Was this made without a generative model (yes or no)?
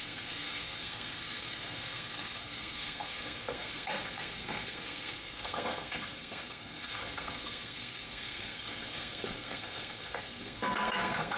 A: no